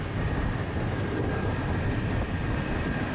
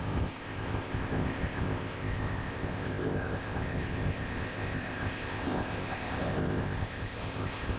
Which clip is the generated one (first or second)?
second